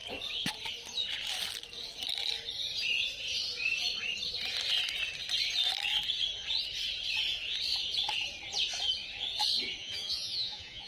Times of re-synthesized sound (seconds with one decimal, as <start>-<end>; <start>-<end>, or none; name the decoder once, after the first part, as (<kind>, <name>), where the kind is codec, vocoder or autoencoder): 9.8-10.9 (vocoder, Vocos)